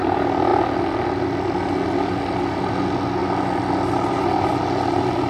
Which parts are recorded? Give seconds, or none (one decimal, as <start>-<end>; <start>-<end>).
0.0-5.3

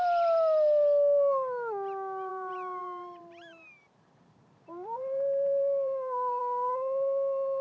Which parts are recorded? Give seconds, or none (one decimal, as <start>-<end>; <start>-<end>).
0.0-2.3; 6.4-7.6

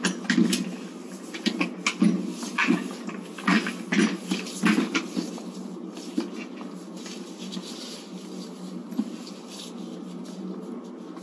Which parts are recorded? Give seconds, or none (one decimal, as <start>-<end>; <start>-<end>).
0.0-2.6; 3.2-8.8; 9.4-11.2

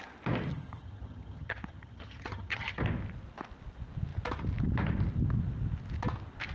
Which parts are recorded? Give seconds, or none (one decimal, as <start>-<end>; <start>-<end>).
0.0-0.5; 2.8-6.5

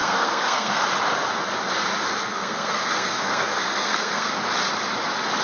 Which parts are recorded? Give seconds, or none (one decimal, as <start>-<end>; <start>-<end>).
0.8-2.3; 4.3-5.4

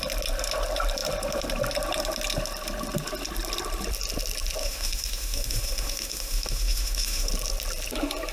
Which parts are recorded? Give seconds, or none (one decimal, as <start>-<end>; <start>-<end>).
0.0-4.6; 7.3-8.3

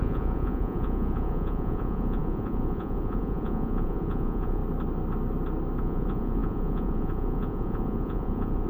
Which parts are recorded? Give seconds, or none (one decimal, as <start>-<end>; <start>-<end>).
4.6-5.8

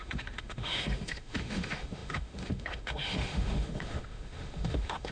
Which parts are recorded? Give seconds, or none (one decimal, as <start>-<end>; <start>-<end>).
none